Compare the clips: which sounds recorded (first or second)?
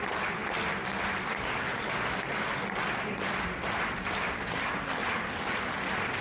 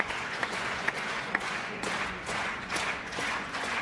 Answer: first